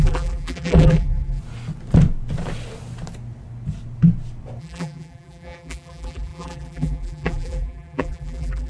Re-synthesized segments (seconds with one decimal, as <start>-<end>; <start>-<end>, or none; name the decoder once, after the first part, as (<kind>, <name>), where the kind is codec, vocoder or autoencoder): 0.0-1.4 (vocoder, BigVGAN v2); 4.6-8.7